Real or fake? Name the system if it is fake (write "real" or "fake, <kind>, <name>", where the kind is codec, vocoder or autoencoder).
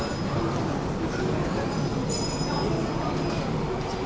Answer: real